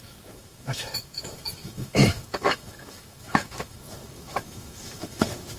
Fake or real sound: fake